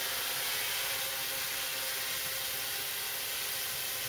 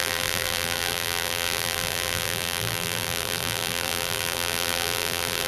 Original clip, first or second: first